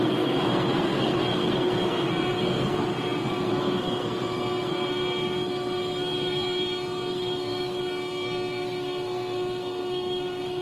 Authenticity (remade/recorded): remade